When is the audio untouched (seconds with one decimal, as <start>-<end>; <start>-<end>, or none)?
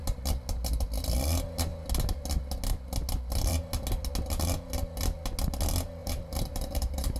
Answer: 0.0-6.0